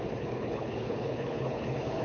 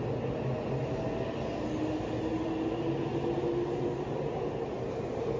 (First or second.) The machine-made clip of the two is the first